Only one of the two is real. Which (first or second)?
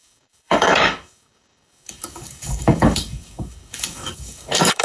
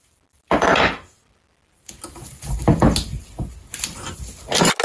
second